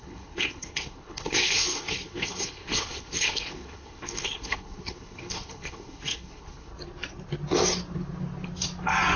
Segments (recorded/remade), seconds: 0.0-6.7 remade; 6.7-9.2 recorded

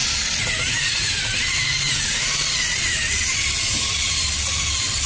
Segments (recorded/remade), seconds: 0.0-5.1 recorded

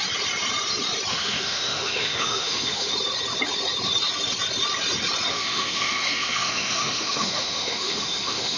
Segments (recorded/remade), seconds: 0.0-1.1 recorded; 1.1-2.9 remade; 2.9-5.3 recorded; 5.3-8.6 remade